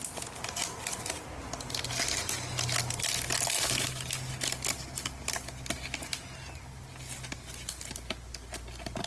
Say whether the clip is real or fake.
real